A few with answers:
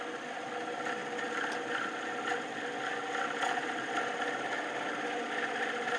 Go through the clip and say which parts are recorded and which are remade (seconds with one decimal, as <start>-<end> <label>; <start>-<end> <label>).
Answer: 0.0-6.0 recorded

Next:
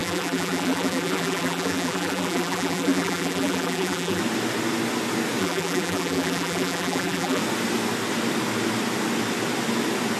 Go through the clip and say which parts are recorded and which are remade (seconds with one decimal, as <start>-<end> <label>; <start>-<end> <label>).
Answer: 0.0-4.2 remade; 4.2-5.4 recorded; 5.4-7.4 remade; 7.4-10.2 recorded

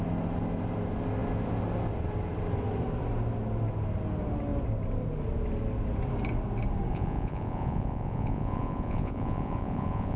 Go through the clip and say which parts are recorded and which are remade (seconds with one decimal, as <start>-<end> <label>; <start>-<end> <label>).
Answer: 0.0-6.9 recorded; 6.9-10.2 remade